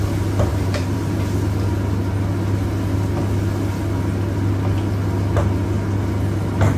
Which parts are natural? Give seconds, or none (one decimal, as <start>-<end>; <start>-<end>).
0.0-0.5; 1.1-6.8